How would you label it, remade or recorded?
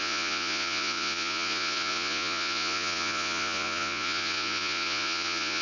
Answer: remade